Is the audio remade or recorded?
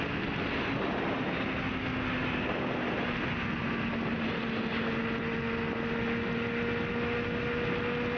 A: recorded